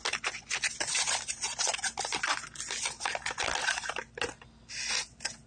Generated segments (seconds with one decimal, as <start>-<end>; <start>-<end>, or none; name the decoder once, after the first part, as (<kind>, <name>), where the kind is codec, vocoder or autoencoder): none